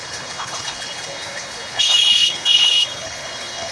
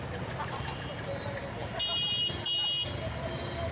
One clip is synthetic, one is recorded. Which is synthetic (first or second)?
first